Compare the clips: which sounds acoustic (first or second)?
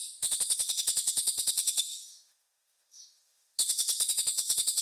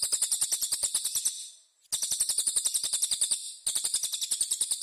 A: second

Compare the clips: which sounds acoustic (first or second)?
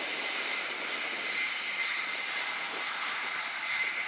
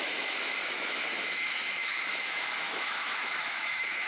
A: first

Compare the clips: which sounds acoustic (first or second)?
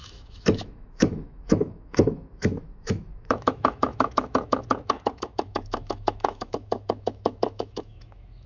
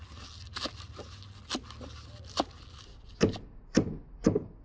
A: second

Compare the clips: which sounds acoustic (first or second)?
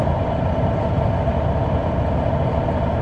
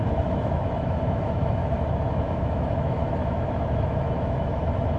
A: first